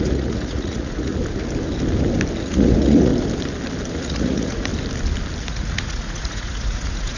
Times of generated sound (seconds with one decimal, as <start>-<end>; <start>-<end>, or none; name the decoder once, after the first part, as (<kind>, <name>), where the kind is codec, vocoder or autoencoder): 0.0-1.2 (vocoder, Vocos); 2.4-3.1; 3.9-4.7; 5.4-7.2